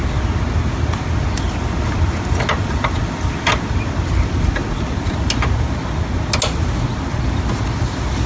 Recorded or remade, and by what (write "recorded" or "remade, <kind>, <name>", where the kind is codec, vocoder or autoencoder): recorded